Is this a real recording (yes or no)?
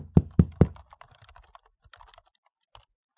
yes